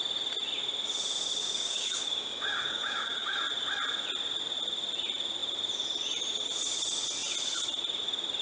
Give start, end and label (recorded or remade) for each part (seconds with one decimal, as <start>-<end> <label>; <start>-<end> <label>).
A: 0.0-1.4 recorded; 1.4-3.4 remade; 3.4-8.4 recorded